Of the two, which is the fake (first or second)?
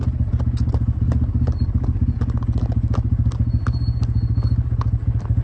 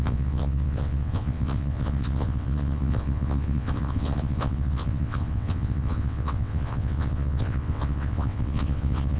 second